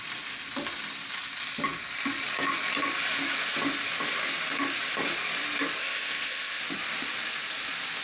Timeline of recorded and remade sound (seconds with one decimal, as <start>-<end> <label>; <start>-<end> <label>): 0.0-5.8 recorded; 5.8-6.6 remade; 6.6-8.0 recorded